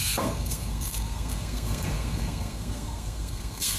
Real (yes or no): no